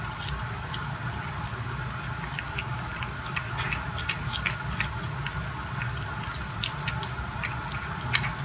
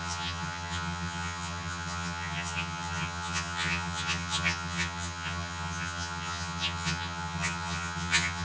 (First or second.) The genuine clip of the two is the first